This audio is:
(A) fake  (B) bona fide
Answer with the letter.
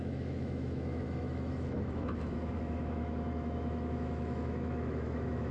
A